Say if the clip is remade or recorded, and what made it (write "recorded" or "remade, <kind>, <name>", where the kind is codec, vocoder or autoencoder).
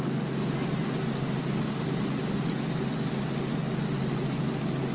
recorded